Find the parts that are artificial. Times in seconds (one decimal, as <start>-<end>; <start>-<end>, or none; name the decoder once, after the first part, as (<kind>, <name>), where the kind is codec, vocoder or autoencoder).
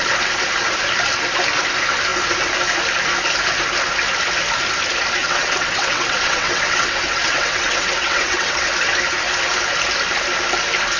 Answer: 5.2-8.7 (vocoder, WaveNeXt)